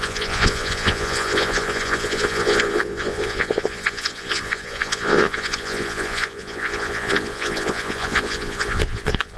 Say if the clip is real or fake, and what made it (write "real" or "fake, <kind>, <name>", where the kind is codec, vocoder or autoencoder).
fake, vocoder, Vocos